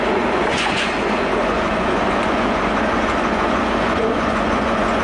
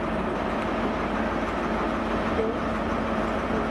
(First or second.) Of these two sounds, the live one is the second